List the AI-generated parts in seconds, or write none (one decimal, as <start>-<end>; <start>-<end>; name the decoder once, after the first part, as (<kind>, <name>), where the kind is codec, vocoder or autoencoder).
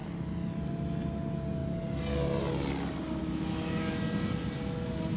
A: 3.2-4.0 (autoencoder, DAC-VAE)